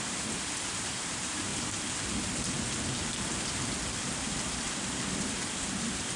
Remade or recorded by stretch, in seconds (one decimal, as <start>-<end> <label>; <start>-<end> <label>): 0.0-1.5 remade; 1.5-5.2 recorded; 5.2-6.2 remade